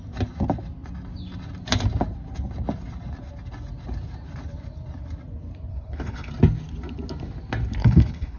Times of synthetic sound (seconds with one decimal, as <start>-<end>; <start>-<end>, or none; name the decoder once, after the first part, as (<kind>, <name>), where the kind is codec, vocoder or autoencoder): 5.7-6.3 (codec, HILCodec); 7.8-8.4